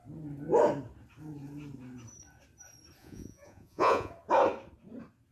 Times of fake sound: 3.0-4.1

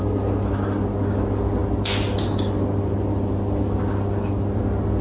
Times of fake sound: none